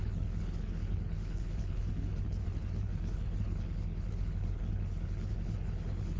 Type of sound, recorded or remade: remade